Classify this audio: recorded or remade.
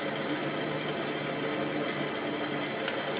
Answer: recorded